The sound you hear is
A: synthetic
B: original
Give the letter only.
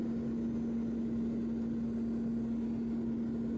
B